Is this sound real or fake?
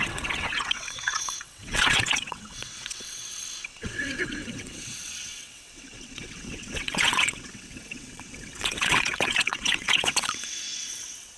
fake